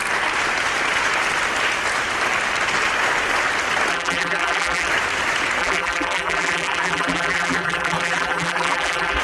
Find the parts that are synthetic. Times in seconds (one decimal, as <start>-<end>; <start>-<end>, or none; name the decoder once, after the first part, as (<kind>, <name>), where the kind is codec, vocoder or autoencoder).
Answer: 3.9-4.9 (vocoder, BigVGAN v2); 5.6-9.2